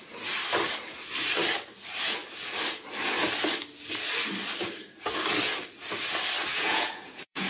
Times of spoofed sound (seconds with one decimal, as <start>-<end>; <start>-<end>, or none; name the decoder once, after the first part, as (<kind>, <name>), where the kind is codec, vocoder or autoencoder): 6.5-7.5 (vocoder, Vocos)